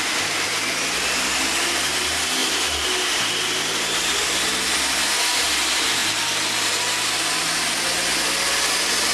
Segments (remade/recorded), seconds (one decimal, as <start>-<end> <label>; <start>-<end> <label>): 0.0-9.1 recorded